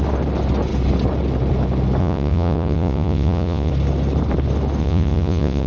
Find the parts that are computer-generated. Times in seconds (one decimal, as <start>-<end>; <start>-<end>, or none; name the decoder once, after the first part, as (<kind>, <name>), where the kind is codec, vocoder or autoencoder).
2.0-3.7 (vocoder, Vocos); 4.8-5.7